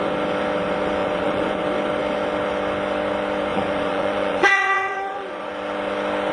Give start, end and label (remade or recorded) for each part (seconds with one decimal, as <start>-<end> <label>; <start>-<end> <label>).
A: 0.0-1.0 recorded; 1.0-1.6 remade; 1.6-3.5 recorded; 3.5-5.5 remade; 5.5-6.3 recorded